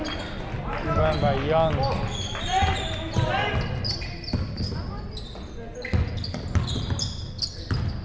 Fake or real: real